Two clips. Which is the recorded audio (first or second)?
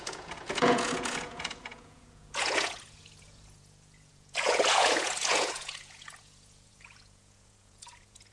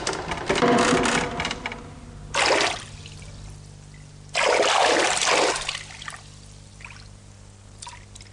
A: second